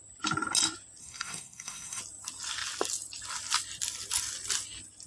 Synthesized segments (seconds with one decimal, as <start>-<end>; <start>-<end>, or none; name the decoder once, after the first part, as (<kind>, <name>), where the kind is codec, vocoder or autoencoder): 1.0-2.0 (codec, SNAC)